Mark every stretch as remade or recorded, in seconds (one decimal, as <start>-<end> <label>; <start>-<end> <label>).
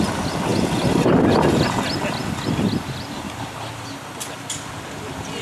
0.0-5.4 recorded